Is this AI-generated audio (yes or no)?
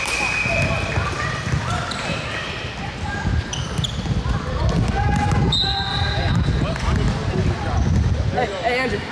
no